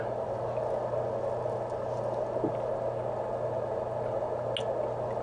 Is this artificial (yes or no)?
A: no